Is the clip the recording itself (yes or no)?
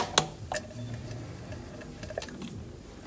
yes